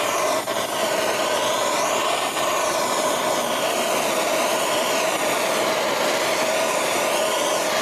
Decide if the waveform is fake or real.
real